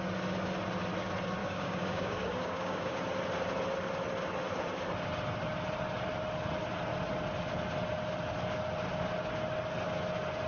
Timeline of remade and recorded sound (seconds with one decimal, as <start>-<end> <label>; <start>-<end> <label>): 0.0-1.4 recorded; 1.4-3.0 remade; 3.0-10.5 recorded